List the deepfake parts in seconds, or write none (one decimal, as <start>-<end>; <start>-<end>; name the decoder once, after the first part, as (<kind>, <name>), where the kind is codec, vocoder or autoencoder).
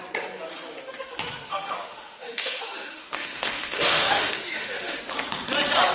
1.5-5.0 (autoencoder, DAC-VAE)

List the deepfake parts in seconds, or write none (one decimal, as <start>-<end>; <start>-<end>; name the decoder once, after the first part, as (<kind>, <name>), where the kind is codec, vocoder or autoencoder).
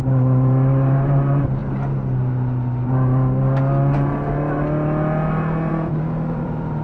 0.0-1.6 (vocoder, BigVGAN v2); 5.7-6.8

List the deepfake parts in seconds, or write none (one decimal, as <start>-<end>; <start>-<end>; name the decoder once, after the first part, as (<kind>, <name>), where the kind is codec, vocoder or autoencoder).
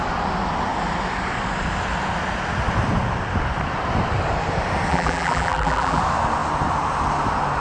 4.9-6.0 (vocoder, BigVGAN v2)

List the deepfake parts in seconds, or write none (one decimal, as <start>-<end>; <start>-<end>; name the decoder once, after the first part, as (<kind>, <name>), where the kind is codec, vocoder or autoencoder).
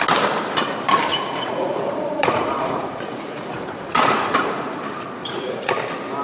1.1-4.8 (vocoder, Vocos); 5.2-5.7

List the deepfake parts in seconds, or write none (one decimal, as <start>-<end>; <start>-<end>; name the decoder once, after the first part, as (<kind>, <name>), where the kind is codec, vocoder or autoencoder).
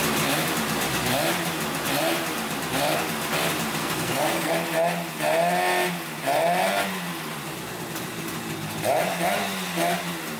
3.8-4.5 (codec, SNAC)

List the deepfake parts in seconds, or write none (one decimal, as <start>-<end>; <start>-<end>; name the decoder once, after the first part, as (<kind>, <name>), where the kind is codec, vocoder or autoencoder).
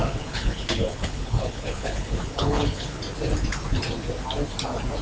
0.0-3.0 (codec, HILCodec)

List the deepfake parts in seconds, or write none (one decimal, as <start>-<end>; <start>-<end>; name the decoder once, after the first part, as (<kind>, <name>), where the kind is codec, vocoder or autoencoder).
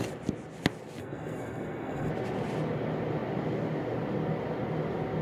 1.0-2.1 (codec, SNAC)